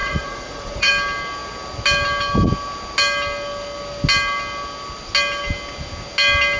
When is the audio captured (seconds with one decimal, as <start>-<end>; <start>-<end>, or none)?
0.9-6.6